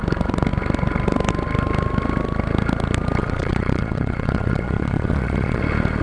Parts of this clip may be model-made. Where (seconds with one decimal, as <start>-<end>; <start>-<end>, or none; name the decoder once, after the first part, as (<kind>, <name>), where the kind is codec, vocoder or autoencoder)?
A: 3.2-5.6 (vocoder, Vocos)